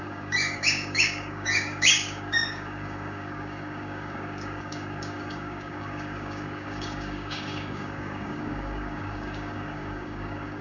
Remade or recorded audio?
remade